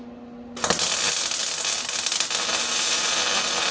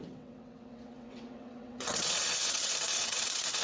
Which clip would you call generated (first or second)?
second